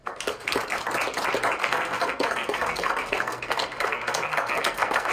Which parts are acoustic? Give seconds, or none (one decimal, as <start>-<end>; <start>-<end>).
0.8-1.6